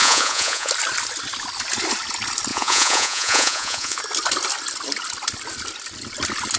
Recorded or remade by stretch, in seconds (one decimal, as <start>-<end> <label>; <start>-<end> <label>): 0.0-0.7 remade; 0.7-2.5 recorded; 2.5-4.0 remade; 4.0-6.6 recorded

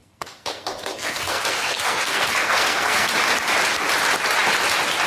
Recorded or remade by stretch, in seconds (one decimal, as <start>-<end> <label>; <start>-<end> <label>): 0.0-3.1 remade; 3.1-5.1 recorded